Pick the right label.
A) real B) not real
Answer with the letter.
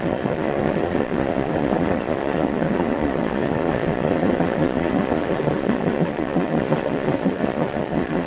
B